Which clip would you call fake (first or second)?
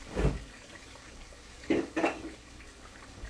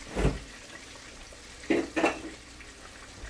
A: first